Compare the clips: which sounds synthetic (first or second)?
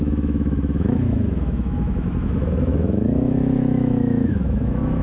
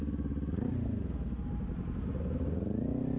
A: first